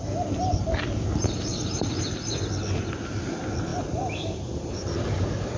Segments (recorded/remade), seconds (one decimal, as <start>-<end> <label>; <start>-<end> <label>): 0.0-1.5 recorded; 1.5-2.2 remade; 2.2-3.7 recorded; 3.7-5.6 remade